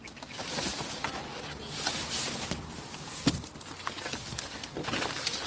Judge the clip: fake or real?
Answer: real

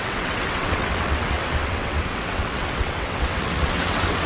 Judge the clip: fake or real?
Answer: fake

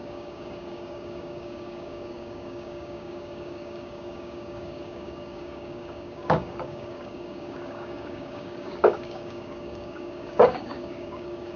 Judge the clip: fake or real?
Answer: fake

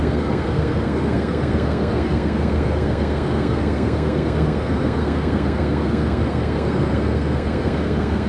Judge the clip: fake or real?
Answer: fake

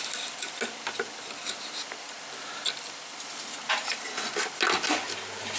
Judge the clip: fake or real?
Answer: real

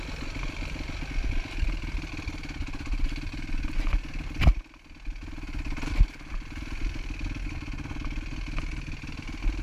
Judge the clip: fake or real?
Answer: real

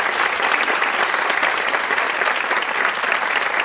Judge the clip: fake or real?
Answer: real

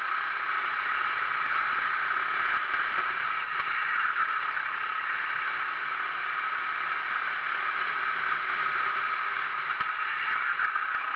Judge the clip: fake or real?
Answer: real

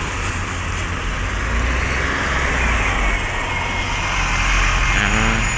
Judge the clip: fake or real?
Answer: real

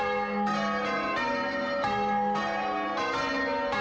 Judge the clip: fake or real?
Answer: real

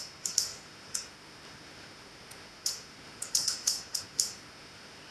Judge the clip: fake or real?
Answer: fake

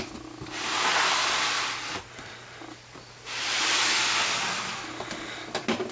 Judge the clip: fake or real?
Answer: real